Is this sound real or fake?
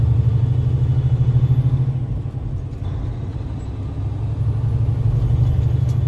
real